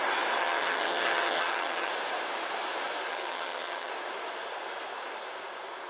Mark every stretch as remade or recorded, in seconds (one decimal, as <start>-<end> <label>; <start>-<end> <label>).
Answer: 0.0-0.4 recorded; 0.4-1.9 remade; 1.9-3.1 recorded; 3.1-3.9 remade; 3.9-5.9 recorded

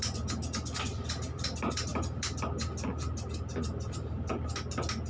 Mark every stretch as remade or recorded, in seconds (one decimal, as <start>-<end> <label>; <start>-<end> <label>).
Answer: 0.0-5.1 recorded

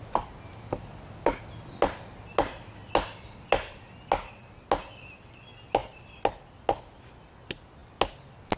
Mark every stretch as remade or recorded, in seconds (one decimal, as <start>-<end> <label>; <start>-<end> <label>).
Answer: 0.0-8.6 recorded

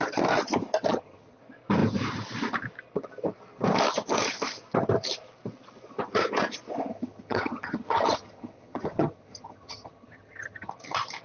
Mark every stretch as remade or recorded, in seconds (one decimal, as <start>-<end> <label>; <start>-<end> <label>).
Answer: 0.0-0.9 recorded; 0.9-1.4 remade; 1.4-6.9 recorded; 6.9-10.7 remade; 10.7-11.2 recorded